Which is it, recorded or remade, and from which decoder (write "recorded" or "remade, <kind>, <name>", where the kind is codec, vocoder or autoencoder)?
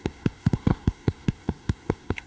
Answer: remade, codec, SNAC